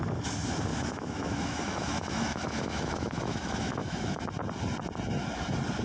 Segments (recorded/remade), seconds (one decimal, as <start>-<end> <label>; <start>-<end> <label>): 0.0-0.7 recorded; 0.7-4.2 remade; 4.2-5.8 recorded